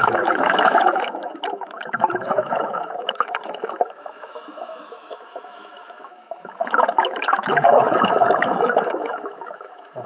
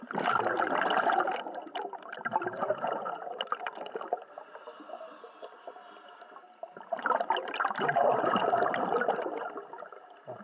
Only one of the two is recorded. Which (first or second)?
second